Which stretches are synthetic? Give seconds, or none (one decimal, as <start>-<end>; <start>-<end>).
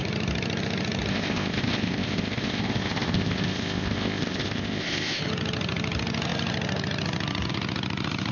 1.1-5.2